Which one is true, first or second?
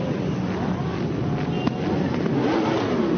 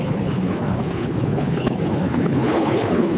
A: first